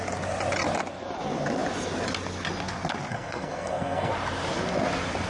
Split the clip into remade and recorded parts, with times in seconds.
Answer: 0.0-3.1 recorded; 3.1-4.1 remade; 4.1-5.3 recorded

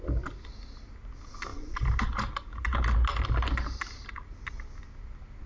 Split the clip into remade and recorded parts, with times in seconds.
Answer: 0.0-5.5 recorded